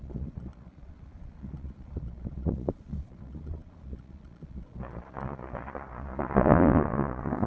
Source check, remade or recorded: remade